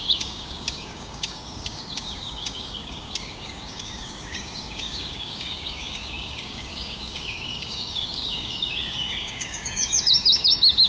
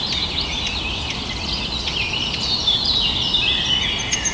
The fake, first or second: first